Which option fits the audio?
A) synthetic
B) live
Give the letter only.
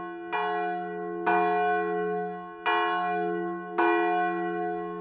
B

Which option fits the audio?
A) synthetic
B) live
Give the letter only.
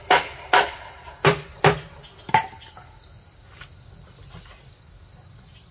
B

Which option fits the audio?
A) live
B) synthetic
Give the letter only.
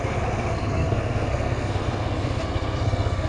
B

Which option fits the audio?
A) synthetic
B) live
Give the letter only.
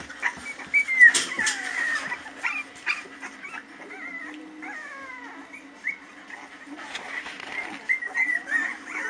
B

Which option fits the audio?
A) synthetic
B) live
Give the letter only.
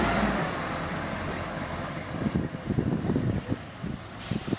A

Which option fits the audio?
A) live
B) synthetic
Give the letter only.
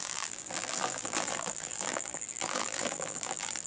B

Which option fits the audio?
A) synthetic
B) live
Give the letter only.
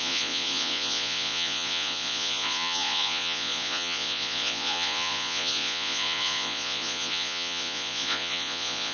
A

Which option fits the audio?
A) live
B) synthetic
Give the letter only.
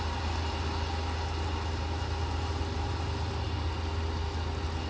A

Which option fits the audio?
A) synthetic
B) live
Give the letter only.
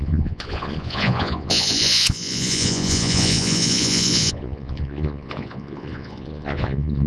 A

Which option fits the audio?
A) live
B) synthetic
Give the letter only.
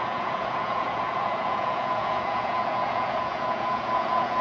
B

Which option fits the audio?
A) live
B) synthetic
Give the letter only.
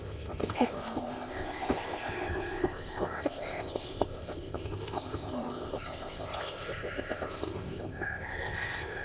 B